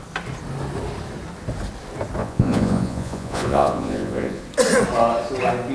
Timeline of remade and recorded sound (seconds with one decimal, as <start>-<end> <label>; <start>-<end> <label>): 0.0-2.2 recorded; 2.2-4.4 remade; 4.4-5.7 recorded